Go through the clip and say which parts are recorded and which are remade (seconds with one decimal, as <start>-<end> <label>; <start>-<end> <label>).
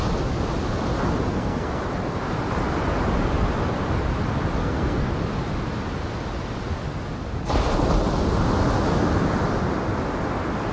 0.0-1.3 recorded; 1.3-1.8 remade; 1.8-4.6 recorded; 4.6-5.1 remade; 5.1-10.7 recorded